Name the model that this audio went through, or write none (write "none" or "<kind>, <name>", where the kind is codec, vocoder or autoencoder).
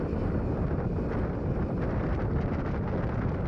none